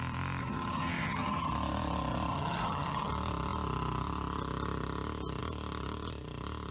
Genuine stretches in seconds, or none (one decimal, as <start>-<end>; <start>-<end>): 0.0-0.4; 1.5-2.3; 3.1-6.7

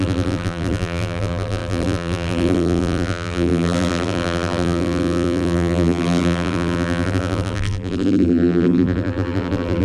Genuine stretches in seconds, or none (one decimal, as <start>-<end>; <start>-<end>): none

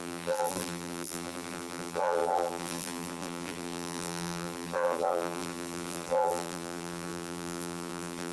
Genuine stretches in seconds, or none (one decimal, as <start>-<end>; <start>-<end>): none